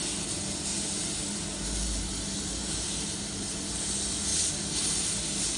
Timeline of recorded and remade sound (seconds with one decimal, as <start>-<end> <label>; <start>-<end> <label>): 0.0-0.7 recorded; 0.7-3.6 remade; 3.6-5.6 recorded